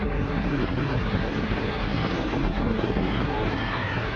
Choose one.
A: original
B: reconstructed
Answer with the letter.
B